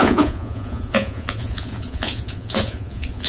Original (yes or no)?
no